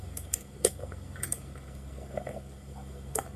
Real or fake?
fake